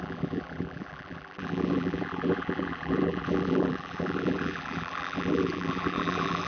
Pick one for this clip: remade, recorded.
remade